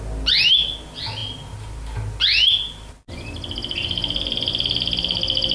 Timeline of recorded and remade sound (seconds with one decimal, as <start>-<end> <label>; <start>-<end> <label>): 0.0-5.5 recorded